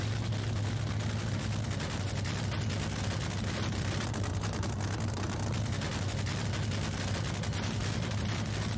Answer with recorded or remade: recorded